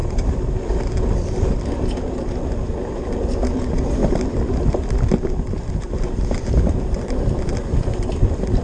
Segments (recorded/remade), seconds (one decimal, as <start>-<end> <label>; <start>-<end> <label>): 0.0-1.4 remade; 1.4-4.0 recorded; 4.0-8.6 remade